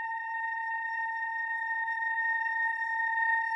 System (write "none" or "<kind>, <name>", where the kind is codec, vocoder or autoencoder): codec, HILCodec